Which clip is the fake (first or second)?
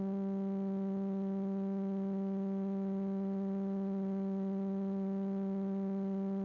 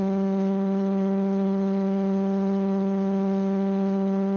second